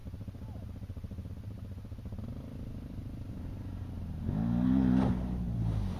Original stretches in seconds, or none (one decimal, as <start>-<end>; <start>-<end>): 0.0-6.0